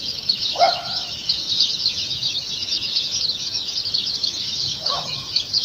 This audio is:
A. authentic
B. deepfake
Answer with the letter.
B